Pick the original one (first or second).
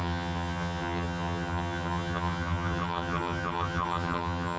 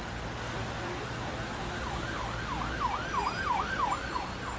second